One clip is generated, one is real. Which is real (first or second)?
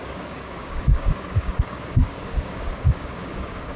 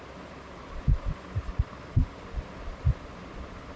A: second